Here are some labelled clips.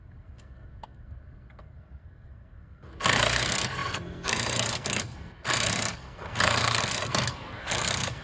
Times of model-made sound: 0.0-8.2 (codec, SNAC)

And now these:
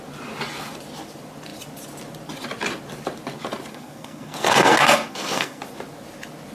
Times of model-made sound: 3.7-5.6 (codec, SNAC)

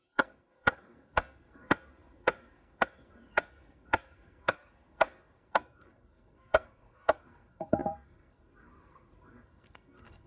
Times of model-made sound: 0.0-10.3 (codec, SNAC)

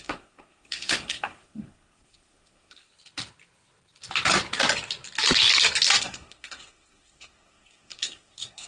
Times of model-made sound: 0.0-2.9 (codec, SNAC); 6.0-8.7

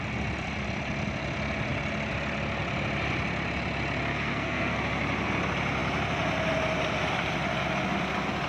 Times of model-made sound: 4.1-4.8 (codec, SNAC)